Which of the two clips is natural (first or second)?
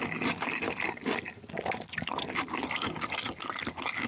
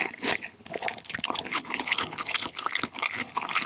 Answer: first